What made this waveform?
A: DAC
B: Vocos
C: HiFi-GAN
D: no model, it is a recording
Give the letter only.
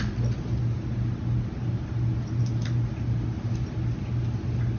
D